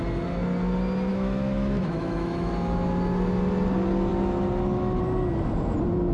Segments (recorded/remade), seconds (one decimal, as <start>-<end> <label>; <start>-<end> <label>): 0.0-1.1 recorded; 1.1-2.5 remade; 2.5-6.1 recorded